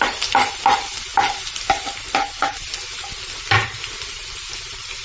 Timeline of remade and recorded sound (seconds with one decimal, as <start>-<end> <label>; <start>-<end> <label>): 0.0-5.0 recorded